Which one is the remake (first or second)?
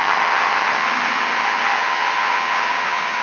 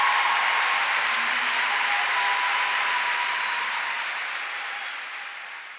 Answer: first